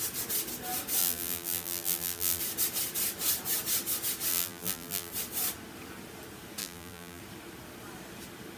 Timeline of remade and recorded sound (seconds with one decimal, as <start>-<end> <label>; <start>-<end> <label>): 0.0-1.0 recorded; 1.0-2.4 remade; 2.4-4.3 recorded; 4.3-5.1 remade; 5.1-6.6 recorded; 6.6-7.2 remade; 7.2-8.6 recorded